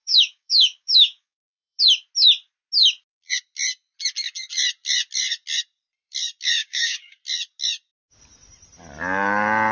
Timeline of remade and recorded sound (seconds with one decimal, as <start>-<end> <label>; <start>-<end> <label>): 0.0-1.8 remade; 1.8-6.6 recorded; 6.6-7.2 remade; 7.2-9.7 recorded